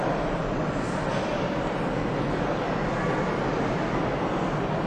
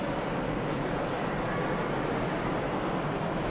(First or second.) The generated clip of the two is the second